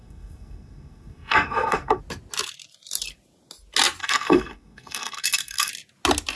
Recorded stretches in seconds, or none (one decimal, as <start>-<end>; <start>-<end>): 2.0-4.0; 5.7-6.4